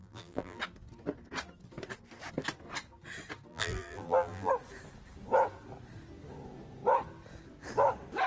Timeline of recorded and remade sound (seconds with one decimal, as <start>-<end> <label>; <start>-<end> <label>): 0.0-0.6 remade; 0.6-3.5 recorded; 3.5-4.5 remade; 4.5-8.3 recorded